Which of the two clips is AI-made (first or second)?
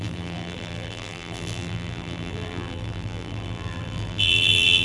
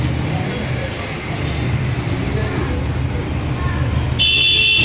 first